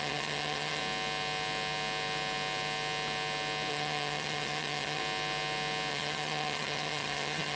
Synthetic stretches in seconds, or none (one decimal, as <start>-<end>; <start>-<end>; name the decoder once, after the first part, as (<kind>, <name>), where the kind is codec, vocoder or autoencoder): 0.0-0.8 (vocoder, HiFi-GAN); 3.7-5.0; 5.9-7.6